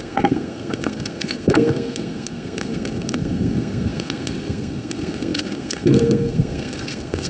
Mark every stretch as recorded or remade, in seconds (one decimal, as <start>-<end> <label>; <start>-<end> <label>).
0.0-7.3 remade

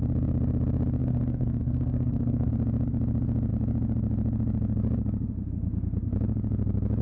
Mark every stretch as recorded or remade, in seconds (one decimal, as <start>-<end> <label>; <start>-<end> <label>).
0.0-1.0 recorded; 1.0-2.5 remade; 2.5-7.0 recorded

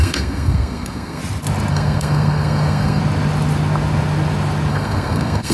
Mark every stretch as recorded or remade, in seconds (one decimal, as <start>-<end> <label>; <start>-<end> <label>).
0.0-1.2 remade; 1.2-1.7 recorded; 1.7-3.0 remade; 3.0-4.7 recorded; 4.7-5.5 remade

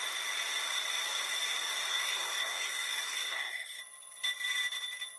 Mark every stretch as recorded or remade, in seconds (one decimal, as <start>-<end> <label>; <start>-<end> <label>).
0.0-1.9 recorded; 1.9-3.8 remade; 3.8-5.2 recorded

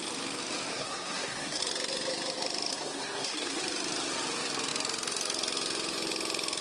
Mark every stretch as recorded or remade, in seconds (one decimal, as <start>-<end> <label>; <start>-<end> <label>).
0.0-0.7 recorded; 0.7-1.6 remade; 1.6-2.7 recorded; 2.7-3.6 remade; 3.6-6.6 recorded

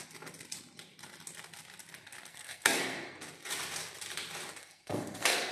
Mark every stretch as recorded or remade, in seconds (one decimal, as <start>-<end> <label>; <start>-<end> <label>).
0.0-2.3 recorded; 2.3-3.2 remade; 3.2-4.6 recorded; 4.6-5.5 remade